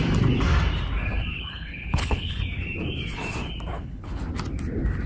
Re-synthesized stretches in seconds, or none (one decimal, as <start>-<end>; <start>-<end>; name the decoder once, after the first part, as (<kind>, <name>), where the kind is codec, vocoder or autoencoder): 1.3-2.4 (codec, HILCodec); 3.7-4.2